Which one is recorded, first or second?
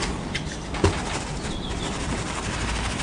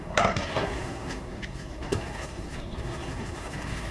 first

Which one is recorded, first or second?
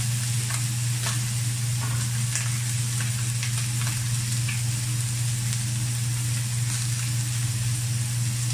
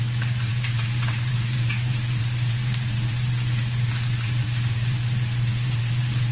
first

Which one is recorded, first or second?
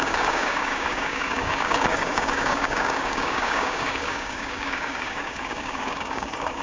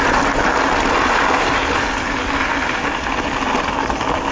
second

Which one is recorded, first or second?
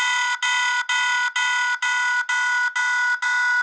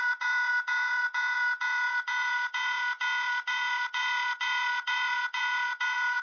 first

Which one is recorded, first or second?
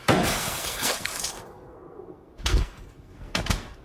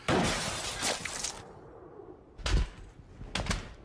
second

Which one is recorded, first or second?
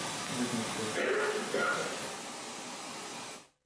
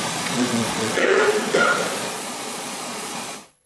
first